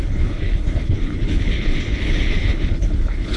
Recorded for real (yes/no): no